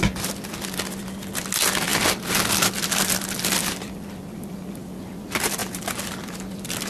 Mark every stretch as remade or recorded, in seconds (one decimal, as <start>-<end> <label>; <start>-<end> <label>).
0.0-6.9 recorded